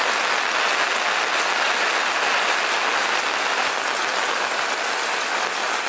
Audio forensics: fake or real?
real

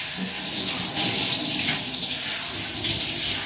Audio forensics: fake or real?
real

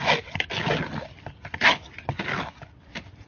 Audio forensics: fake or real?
real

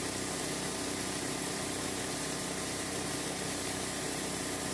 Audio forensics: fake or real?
fake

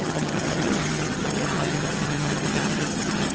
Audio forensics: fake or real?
fake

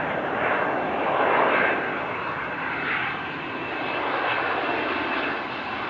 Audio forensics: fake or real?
real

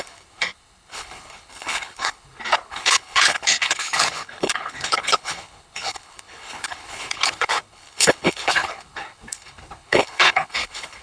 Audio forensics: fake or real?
fake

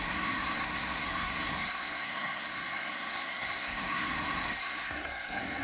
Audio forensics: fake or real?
fake